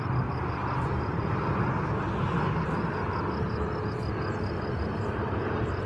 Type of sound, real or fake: real